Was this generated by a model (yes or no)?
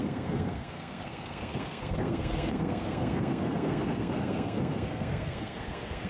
yes